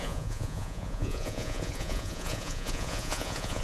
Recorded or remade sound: remade